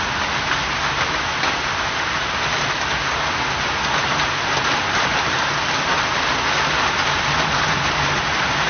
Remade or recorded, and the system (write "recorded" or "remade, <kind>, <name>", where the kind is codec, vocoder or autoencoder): recorded